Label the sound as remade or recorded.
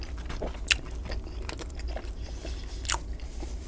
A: recorded